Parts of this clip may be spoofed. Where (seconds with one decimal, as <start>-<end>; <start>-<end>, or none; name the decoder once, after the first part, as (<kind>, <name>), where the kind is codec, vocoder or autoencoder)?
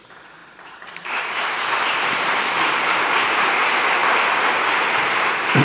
0.4-3.5 (vocoder, BigVGAN v2)